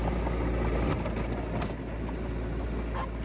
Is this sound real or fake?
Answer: real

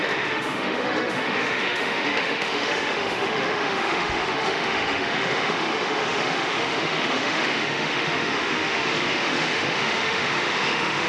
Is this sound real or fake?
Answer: fake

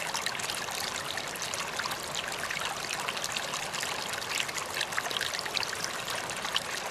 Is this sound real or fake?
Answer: real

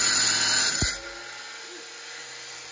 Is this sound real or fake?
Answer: real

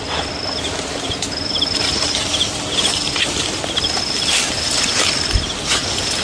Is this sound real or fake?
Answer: real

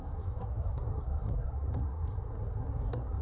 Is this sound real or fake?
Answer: fake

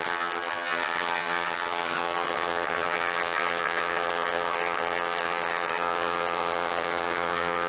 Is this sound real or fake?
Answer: fake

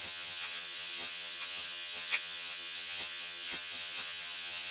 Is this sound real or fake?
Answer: fake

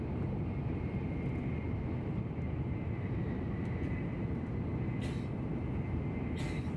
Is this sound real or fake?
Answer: real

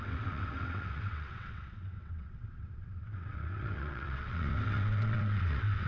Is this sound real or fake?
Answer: fake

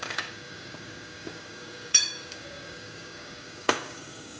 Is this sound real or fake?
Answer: fake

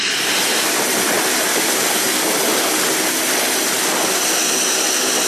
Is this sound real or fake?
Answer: real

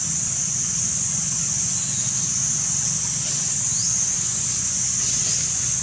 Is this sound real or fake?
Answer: fake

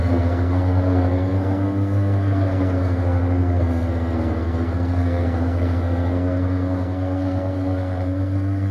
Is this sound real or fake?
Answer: fake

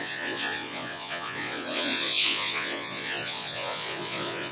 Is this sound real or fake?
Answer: fake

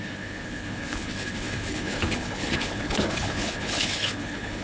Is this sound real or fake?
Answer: fake